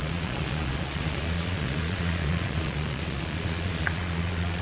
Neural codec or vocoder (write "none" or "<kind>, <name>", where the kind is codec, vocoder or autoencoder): vocoder, Vocos